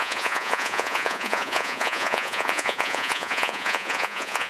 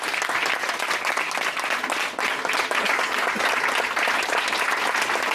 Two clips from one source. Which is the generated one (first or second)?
first